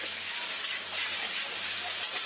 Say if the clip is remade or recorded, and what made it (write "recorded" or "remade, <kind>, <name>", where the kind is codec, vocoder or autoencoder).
recorded